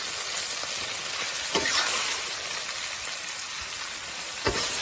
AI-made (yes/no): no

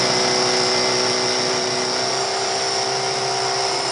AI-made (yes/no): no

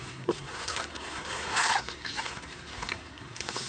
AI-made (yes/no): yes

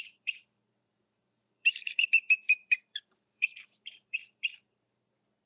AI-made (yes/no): yes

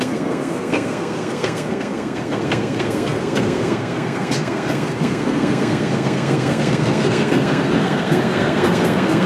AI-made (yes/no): yes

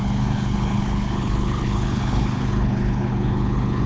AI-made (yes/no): yes